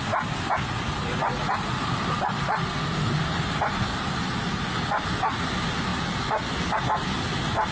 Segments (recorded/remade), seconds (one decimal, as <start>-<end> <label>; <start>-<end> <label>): 0.0-7.7 recorded